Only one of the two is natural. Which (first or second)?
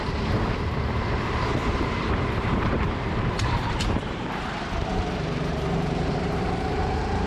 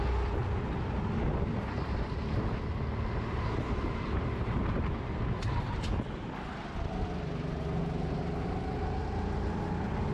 second